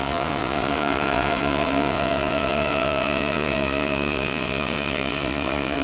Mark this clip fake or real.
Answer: fake